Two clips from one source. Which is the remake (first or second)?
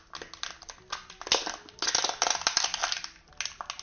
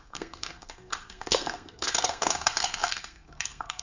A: second